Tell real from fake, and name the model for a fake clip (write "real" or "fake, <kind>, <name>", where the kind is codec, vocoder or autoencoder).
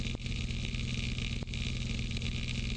real